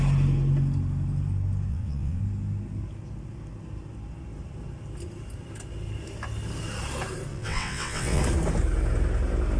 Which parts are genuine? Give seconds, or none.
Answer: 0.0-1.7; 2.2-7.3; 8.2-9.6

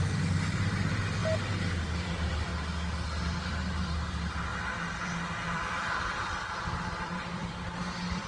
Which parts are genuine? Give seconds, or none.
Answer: 1.2-1.8; 2.5-3.2; 4.5-5.0

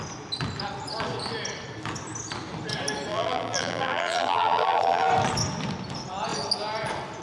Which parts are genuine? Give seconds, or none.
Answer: 0.0-3.1; 5.1-7.2

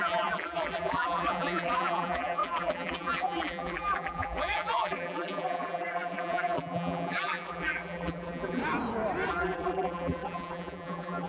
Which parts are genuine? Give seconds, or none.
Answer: 8.6-9.3

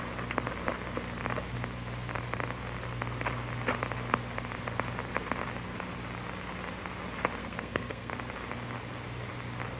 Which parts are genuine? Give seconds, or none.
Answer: 0.0-7.4; 8.1-9.8

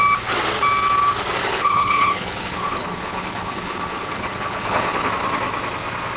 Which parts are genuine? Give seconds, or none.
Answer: 0.0-1.4; 5.1-6.2

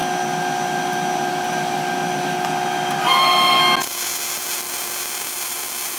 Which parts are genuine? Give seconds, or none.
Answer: 0.0-3.0; 3.6-6.0